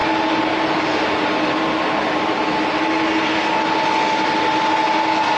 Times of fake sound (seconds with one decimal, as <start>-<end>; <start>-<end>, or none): none